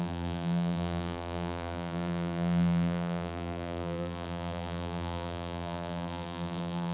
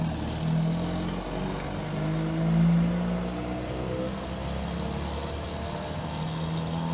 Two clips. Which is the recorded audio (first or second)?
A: second